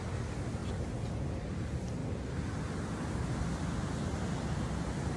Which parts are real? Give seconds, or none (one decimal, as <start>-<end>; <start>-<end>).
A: 0.0-5.2